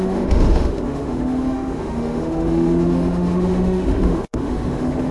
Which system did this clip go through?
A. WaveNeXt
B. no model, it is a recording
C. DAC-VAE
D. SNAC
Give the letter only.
C